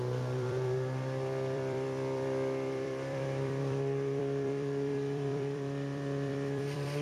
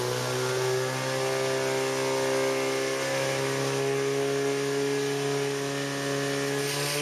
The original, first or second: second